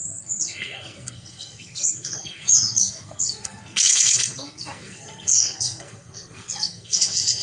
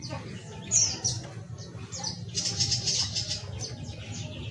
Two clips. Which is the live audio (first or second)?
second